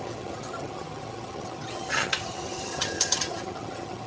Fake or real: fake